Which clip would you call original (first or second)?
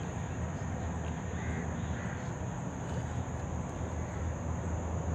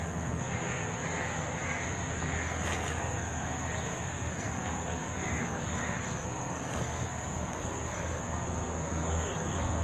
first